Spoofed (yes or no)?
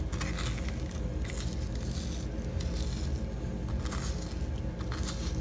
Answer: no